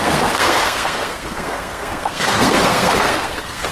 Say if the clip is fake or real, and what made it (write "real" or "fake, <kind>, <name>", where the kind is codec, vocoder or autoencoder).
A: fake, codec, SNAC